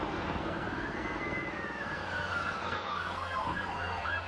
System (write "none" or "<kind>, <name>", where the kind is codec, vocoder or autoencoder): codec, SNAC